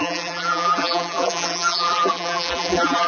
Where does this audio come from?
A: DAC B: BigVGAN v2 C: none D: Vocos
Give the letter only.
B